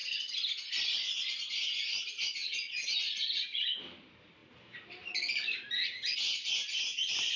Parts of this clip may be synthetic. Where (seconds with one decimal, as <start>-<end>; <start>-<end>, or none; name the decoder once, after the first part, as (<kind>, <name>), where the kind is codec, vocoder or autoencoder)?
none